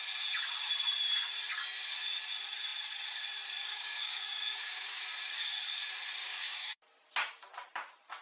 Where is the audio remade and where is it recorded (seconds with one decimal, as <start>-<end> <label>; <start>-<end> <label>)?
0.0-3.7 recorded; 3.7-5.0 remade; 5.0-6.2 recorded; 6.2-6.8 remade; 6.8-8.2 recorded